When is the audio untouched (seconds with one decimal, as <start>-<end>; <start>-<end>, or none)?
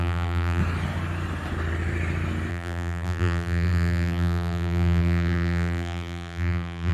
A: 0.6-2.5